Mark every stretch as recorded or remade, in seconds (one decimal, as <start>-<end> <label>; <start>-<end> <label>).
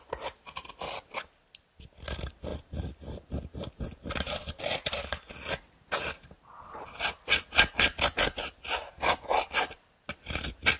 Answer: 0.0-2.5 recorded; 2.5-4.6 remade; 4.6-10.8 recorded